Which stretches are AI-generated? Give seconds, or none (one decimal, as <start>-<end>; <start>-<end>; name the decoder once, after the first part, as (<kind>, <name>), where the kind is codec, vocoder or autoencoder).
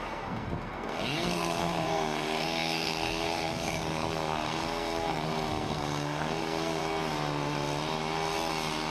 0.0-6.8 (codec, SNAC)